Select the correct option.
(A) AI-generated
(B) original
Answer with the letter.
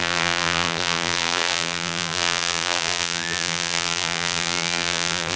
A